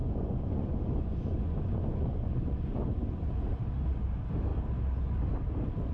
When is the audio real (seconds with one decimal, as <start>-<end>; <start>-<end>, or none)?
3.3-5.9